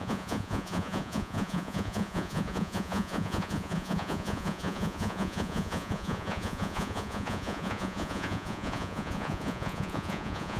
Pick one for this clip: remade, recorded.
remade